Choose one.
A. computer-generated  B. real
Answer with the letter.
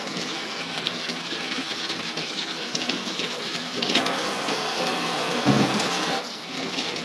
A